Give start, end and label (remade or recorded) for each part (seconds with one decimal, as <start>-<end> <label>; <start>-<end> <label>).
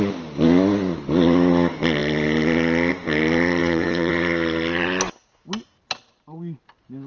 0.0-3.6 recorded; 3.6-4.1 remade; 4.1-7.1 recorded